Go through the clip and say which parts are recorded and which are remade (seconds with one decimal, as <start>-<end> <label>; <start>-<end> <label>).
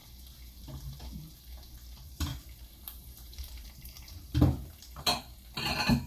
0.0-1.7 remade; 1.7-2.3 recorded; 2.3-5.0 remade; 5.0-6.1 recorded